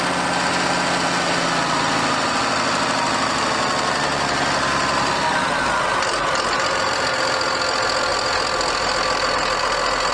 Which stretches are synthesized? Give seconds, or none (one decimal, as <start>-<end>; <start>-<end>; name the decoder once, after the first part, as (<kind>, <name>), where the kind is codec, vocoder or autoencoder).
none